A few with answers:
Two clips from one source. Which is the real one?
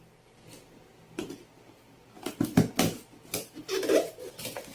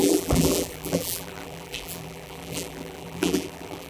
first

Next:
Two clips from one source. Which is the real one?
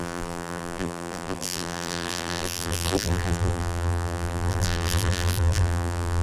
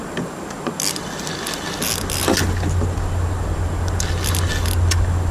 second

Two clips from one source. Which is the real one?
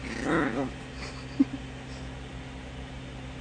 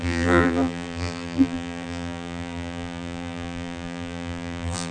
first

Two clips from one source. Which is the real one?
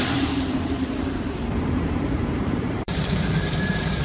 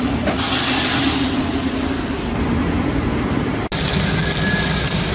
second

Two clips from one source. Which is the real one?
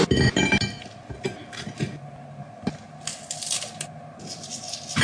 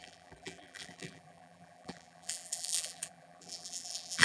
first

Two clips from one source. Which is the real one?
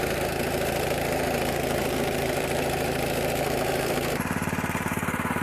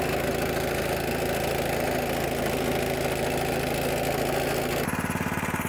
second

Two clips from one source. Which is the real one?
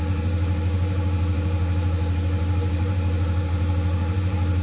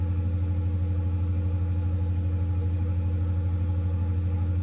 second